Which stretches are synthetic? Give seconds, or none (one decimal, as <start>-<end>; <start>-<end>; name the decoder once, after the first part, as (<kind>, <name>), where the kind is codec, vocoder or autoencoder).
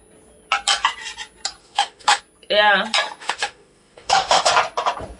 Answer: 1.6-2.2 (autoencoder, DAC-VAE); 3.2-4.5